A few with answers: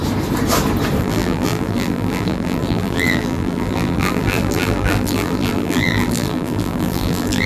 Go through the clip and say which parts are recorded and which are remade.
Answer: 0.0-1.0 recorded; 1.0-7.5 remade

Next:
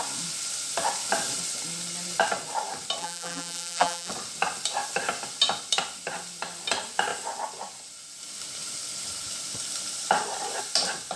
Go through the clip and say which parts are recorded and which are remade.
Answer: 0.0-3.0 recorded; 3.0-4.1 remade; 4.1-11.2 recorded

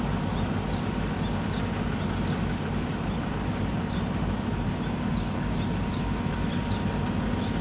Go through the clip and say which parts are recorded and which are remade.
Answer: 0.0-2.9 recorded; 2.9-5.2 remade; 5.2-7.6 recorded

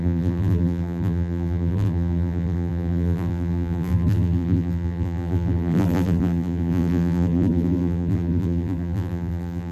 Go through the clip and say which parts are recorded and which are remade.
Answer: 0.0-9.7 remade